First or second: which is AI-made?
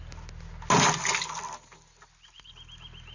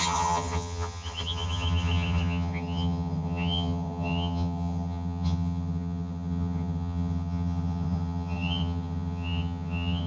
second